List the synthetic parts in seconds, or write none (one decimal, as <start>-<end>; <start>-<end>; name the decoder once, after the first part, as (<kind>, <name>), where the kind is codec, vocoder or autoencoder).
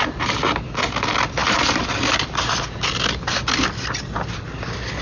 1.4-4.4 (vocoder, BigVGAN v2)